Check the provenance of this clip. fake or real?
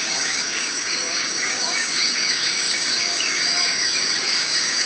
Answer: fake